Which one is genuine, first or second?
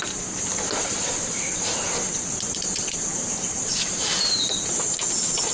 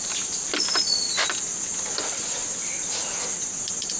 second